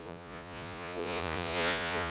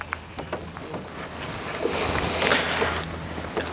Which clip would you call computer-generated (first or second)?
first